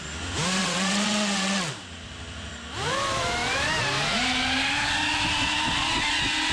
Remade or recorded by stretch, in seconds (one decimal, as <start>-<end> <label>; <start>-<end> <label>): 0.0-0.6 recorded; 0.6-1.7 remade; 1.7-6.5 recorded